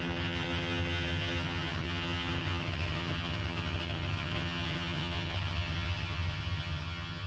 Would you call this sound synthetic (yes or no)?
yes